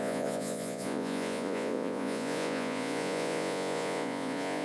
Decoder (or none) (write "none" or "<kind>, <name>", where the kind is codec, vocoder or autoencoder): vocoder, Vocos